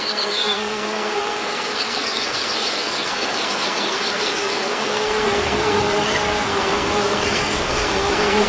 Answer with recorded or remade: remade